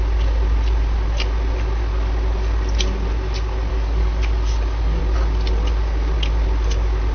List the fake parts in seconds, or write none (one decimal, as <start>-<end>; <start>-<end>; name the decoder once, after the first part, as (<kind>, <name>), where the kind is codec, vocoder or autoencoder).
3.7-5.0 (codec, DAC)